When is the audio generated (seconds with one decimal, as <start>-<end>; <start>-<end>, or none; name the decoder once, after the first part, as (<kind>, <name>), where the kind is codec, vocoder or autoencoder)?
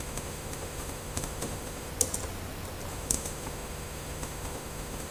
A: 0.0-1.9 (autoencoder, DAC-VAE); 2.9-5.1